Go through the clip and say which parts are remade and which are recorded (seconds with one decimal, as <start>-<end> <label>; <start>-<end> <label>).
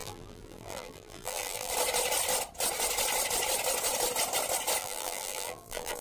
0.0-1.7 remade; 1.7-4.8 recorded; 4.8-6.0 remade